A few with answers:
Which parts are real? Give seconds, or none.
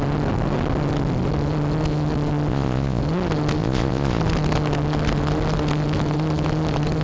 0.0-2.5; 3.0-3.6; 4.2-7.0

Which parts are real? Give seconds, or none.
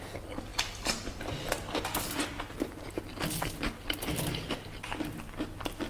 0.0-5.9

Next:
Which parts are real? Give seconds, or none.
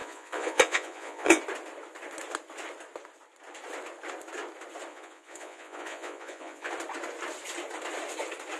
1.4-4.9; 6.7-8.6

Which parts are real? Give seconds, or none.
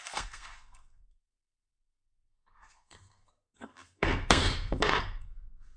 none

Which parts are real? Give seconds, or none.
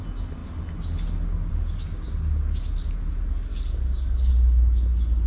0.0-3.5; 4.3-5.3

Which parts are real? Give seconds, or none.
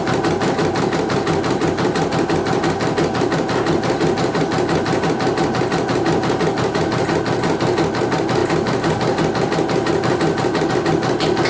0.0-11.5